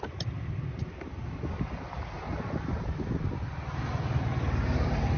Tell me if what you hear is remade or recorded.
recorded